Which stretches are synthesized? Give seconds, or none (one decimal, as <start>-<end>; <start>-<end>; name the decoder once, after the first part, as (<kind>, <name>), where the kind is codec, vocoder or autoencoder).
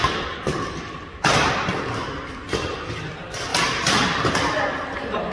none